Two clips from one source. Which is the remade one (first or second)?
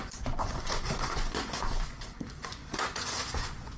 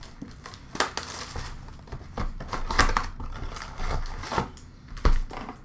first